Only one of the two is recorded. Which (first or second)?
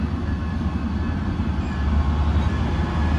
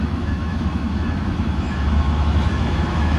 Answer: first